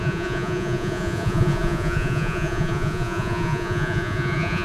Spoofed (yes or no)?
yes